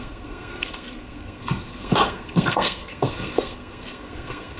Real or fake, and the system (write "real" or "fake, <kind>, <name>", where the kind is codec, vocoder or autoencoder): fake, codec, SNAC